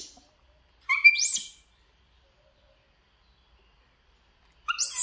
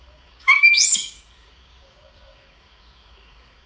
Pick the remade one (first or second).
second